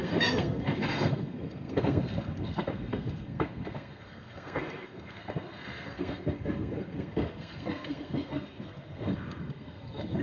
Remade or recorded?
remade